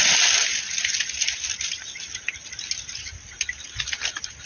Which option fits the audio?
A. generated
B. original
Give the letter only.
B